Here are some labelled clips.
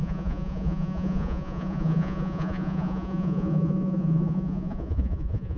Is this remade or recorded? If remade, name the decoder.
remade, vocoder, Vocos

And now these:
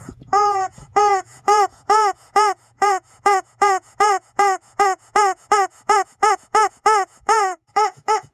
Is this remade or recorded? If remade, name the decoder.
remade, vocoder, Vocos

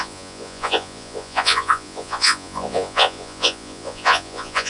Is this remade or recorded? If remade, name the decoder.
remade, vocoder, Vocos